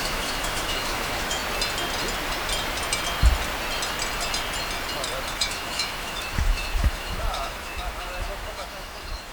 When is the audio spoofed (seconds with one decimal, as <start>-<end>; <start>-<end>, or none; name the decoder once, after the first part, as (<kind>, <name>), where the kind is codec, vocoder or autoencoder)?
0.0-1.4 (autoencoder, DAC-VAE); 5.3-9.3